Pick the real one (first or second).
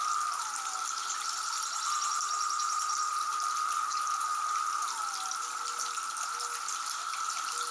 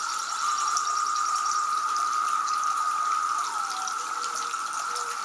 first